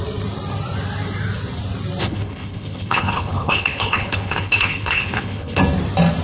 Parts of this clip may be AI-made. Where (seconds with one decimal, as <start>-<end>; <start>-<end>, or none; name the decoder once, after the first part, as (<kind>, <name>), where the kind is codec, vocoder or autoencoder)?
2.0-5.6 (codec, HILCodec)